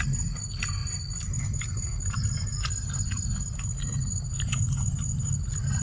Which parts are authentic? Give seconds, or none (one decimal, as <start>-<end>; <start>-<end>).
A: 0.0-5.8